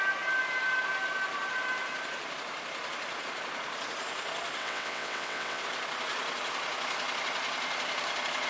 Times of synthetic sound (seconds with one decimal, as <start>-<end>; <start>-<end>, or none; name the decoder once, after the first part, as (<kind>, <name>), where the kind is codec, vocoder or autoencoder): 4.6-5.6 (vocoder, WaveNeXt)